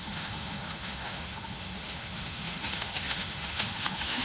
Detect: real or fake fake